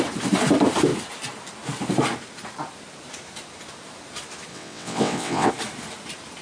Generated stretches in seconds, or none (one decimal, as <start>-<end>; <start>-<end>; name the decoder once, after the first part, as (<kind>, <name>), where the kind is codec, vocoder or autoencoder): 4.5-5.5 (vocoder, WaveNeXt)